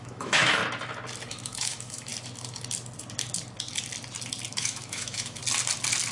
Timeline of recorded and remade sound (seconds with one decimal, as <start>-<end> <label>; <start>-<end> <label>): 0.0-0.6 remade; 0.6-1.3 recorded; 1.3-2.1 remade; 2.1-4.5 recorded; 4.5-5.4 remade; 5.4-6.1 recorded